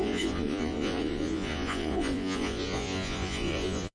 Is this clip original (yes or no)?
no